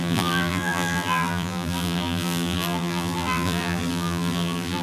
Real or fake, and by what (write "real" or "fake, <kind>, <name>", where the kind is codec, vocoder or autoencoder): fake, vocoder, BigVGAN v2